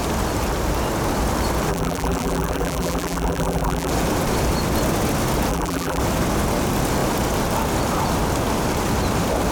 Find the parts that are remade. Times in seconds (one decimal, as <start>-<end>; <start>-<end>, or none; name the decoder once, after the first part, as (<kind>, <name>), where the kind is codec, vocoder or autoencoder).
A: 1.7-3.9 (vocoder, BigVGAN v2); 5.5-6.0